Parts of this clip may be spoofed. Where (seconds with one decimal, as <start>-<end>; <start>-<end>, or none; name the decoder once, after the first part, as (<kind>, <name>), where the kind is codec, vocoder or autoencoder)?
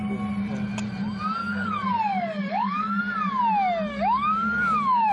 1.4-3.0 (codec, DAC); 3.9-5.1